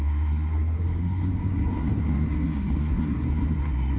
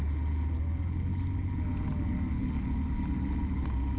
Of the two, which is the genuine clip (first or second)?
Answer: second